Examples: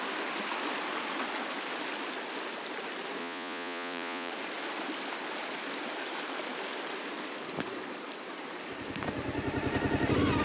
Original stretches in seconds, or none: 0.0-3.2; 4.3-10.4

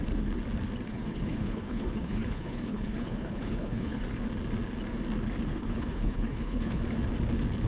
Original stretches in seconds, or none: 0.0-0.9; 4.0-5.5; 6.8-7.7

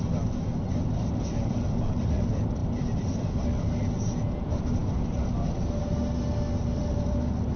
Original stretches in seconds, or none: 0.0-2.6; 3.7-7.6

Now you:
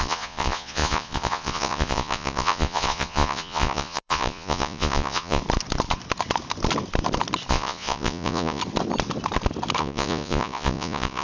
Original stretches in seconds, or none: 5.4-7.5; 8.6-9.8

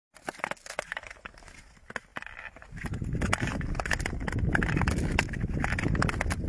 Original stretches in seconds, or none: 0.0-6.5